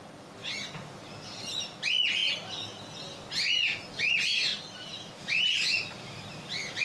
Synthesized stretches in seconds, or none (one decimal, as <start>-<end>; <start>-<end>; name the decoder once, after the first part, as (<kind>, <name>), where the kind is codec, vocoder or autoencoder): 0.0-0.4 (vocoder, BigVGAN v2); 1.0-2.2; 4.1-4.5; 5.2-6.8